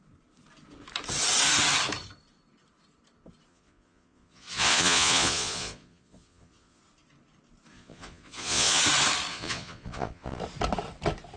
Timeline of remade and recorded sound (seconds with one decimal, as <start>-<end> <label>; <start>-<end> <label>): 0.0-3.5 recorded; 3.5-6.8 remade; 6.8-7.7 recorded; 7.7-8.8 remade; 8.8-9.3 recorded; 9.3-10.4 remade; 10.4-11.4 recorded